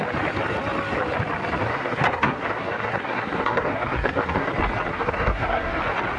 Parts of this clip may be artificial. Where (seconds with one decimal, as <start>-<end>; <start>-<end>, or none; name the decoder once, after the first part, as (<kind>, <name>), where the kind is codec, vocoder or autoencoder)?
1.7-4.5 (codec, SNAC); 4.9-5.8